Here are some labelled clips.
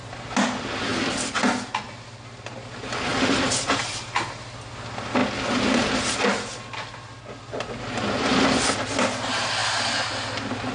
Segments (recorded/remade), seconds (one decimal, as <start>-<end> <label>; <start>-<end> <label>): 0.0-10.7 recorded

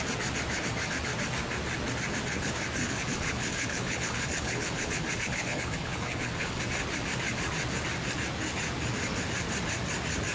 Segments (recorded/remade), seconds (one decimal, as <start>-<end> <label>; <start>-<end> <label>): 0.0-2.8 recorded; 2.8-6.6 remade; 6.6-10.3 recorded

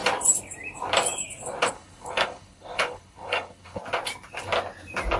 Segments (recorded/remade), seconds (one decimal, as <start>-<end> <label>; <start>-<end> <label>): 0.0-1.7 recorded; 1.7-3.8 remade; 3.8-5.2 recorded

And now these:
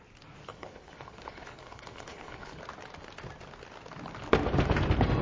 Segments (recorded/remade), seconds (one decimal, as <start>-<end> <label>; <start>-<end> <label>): 0.0-0.5 recorded; 0.5-2.6 remade; 2.6-5.2 recorded